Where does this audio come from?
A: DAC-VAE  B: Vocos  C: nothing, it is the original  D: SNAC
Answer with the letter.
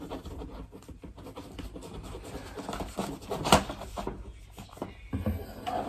C